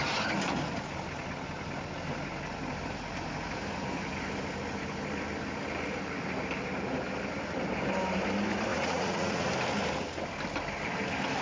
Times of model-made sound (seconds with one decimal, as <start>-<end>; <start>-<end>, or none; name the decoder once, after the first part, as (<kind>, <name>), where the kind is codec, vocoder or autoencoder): 8.7-9.5 (vocoder, Vocos)